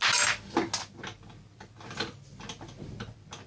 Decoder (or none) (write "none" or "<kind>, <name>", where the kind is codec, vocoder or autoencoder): none